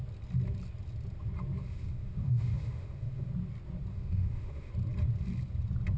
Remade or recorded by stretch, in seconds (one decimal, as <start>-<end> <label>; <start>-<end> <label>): 0.0-1.6 recorded; 1.6-3.3 remade; 3.3-3.9 recorded; 3.9-4.7 remade; 4.7-6.0 recorded